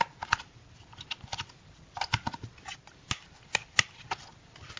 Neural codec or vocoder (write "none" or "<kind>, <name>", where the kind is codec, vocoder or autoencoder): none